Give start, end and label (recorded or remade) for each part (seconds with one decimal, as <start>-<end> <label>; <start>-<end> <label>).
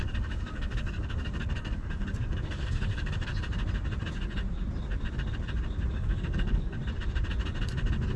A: 0.0-3.3 remade; 3.3-5.9 recorded; 5.9-6.8 remade; 6.8-8.2 recorded